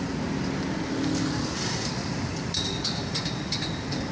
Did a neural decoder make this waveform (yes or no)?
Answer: yes